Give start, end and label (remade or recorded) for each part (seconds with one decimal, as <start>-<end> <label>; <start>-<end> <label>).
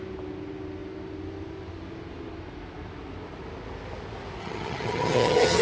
0.0-4.4 recorded; 4.4-5.6 remade